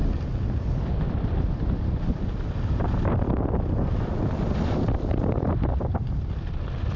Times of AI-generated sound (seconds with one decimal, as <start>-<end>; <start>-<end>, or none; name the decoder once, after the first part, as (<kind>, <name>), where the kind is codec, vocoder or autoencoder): none